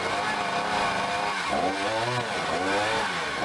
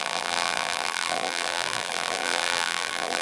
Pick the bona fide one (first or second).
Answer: first